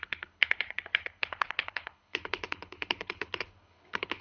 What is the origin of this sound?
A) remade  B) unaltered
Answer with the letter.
A